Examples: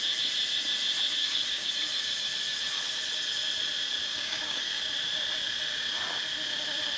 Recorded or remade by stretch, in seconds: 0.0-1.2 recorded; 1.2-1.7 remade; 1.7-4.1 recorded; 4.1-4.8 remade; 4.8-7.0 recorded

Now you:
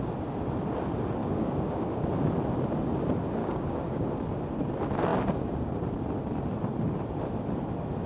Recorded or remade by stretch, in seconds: 0.0-1.2 recorded; 1.2-2.1 remade; 2.1-3.4 recorded; 3.4-4.1 remade; 4.1-8.1 recorded

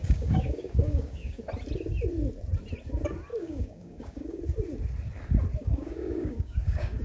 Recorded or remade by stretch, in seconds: 0.0-1.4 remade; 1.4-3.3 recorded; 3.3-4.4 remade; 4.4-5.6 recorded; 5.6-7.0 remade

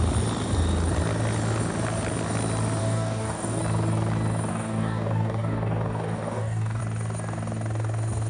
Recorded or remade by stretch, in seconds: 0.0-2.8 recorded; 2.8-3.6 remade; 3.6-4.5 recorded; 4.5-6.8 remade; 6.8-8.3 recorded